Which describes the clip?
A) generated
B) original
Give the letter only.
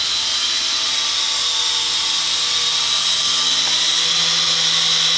B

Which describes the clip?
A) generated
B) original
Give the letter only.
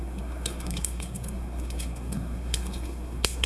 A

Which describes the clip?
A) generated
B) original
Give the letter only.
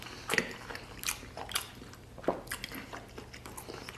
B